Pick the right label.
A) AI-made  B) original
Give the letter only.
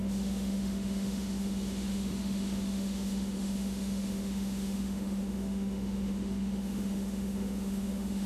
A